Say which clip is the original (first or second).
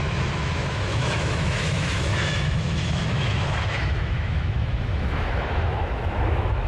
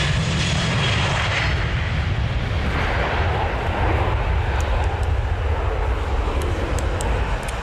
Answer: second